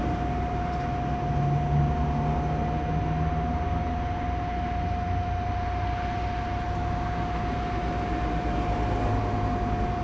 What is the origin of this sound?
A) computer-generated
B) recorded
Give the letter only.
B